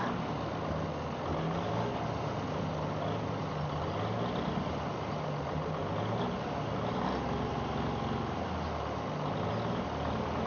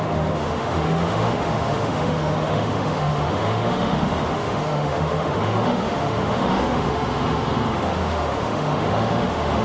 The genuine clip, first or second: first